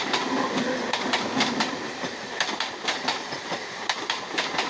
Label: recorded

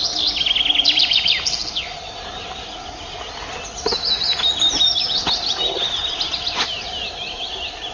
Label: recorded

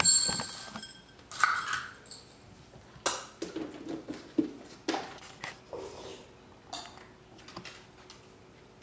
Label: recorded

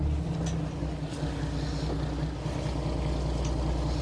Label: recorded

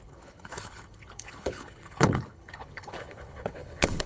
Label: remade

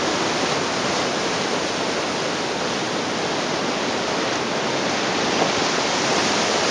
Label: recorded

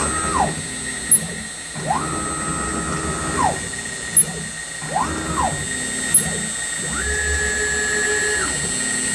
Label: recorded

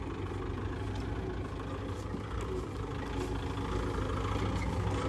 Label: recorded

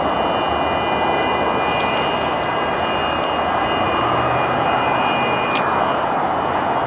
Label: recorded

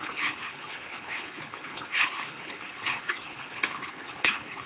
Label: remade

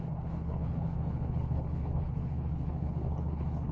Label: remade